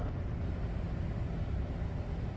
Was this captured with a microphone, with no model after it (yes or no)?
yes